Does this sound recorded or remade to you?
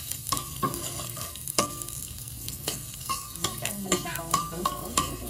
remade